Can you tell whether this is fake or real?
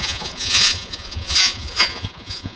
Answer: fake